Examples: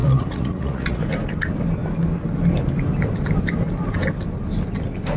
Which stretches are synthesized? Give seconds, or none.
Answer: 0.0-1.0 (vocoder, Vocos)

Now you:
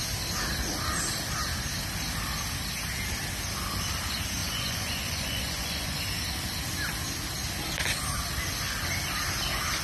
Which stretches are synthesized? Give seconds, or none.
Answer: 4.4-6.0 (vocoder, Vocos)

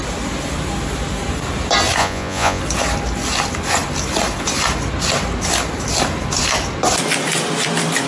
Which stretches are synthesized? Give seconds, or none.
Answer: 2.0-2.6 (vocoder, Vocos)

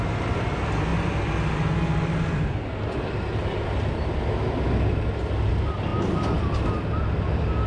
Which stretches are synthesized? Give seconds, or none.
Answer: none

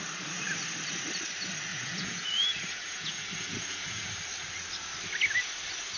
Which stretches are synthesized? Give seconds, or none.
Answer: 1.7-4.1 (vocoder, Vocos)